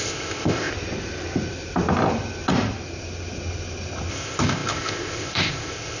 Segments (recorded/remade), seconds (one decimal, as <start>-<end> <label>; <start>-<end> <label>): 0.0-0.7 remade; 0.7-4.1 recorded; 4.1-6.0 remade